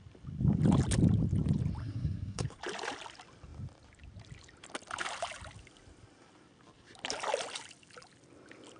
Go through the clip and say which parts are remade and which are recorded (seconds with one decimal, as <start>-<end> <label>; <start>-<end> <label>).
0.0-1.8 recorded; 1.8-2.6 remade; 2.6-8.8 recorded